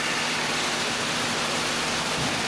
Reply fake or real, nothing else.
real